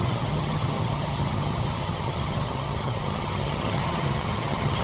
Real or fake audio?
fake